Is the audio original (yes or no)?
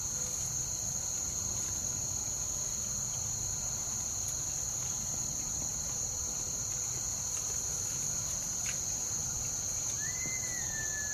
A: yes